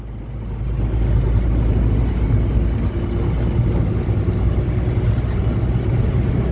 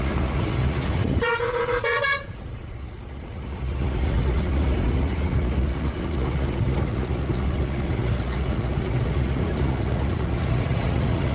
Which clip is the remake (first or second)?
second